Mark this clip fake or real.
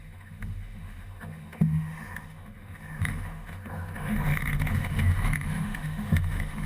fake